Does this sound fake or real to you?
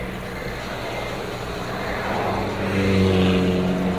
real